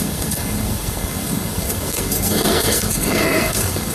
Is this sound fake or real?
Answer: fake